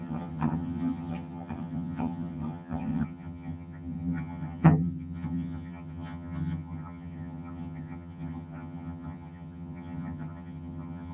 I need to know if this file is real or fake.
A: fake